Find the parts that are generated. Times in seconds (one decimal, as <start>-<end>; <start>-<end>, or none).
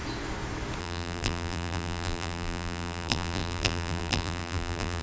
0.8-5.0